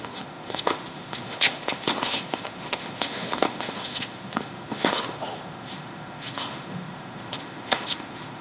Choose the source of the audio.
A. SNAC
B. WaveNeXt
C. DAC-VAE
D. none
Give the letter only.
C